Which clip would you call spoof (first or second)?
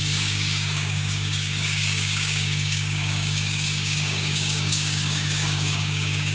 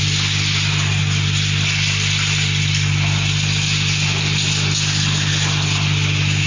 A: first